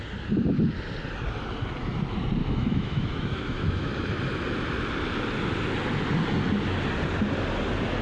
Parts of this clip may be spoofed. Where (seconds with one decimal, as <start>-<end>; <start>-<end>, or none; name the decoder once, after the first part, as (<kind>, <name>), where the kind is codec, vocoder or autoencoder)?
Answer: 2.4-3.9 (autoencoder, DAC-VAE)